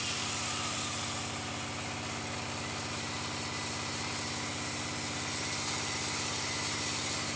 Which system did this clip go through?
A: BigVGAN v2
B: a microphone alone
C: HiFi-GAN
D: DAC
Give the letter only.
B